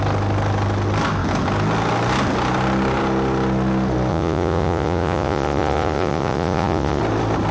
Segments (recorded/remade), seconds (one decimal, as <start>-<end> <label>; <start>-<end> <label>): 0.0-4.1 recorded; 4.1-7.0 remade; 7.0-7.5 recorded